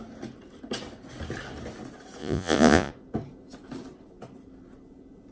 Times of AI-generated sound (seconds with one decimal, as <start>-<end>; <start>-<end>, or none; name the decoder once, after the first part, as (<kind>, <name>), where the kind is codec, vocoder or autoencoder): 2.2-2.9 (vocoder, Vocos)

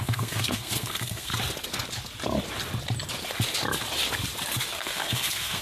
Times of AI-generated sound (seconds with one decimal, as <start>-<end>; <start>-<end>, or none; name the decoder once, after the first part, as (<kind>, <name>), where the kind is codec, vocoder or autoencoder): 0.0-1.3 (codec, SNAC); 4.7-5.6

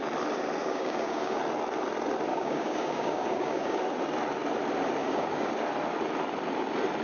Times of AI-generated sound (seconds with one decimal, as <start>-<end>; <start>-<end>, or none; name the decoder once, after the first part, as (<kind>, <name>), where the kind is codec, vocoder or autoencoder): 0.6-1.4 (codec, DAC); 2.3-3.8; 5.0-5.5

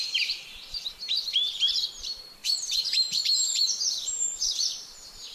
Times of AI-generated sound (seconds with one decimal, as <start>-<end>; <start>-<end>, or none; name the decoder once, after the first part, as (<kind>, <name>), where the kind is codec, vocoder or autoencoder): 0.0-5.3 (vocoder, BigVGAN v2)

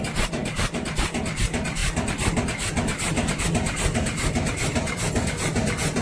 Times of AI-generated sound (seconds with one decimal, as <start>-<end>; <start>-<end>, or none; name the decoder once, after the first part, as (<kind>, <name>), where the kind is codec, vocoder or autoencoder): none

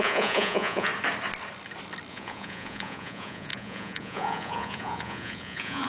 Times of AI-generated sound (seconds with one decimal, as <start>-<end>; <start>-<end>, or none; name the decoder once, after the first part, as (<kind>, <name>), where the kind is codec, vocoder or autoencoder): 0.0-0.9 (vocoder, Vocos); 2.1-5.9